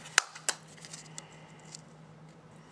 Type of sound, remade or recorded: recorded